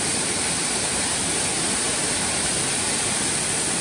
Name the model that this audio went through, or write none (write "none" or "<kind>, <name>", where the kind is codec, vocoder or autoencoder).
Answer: none